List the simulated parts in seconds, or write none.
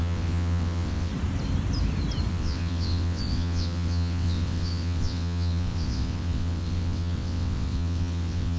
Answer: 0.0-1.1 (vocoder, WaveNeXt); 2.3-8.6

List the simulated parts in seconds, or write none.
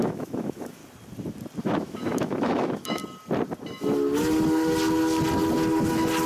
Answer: 0.0-0.8 (autoencoder, DAC-VAE); 1.6-3.0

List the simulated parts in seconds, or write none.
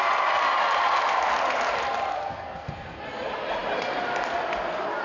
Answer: 2.1-3.0 (codec, SNAC)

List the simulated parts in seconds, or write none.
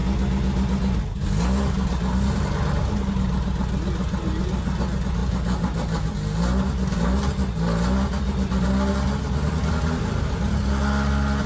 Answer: none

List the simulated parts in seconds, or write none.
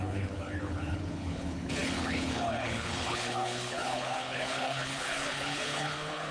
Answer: 0.0-6.3 (codec, HILCodec)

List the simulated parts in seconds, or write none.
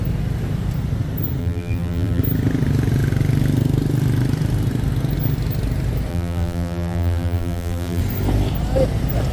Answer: 1.4-2.2 (vocoder, BigVGAN v2); 6.1-8.0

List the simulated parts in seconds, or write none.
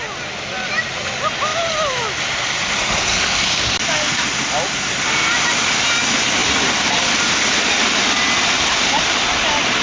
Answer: 1.5-3.6 (vocoder, BigVGAN v2)